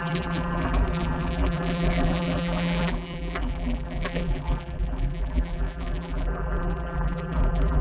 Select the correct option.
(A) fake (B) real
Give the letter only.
A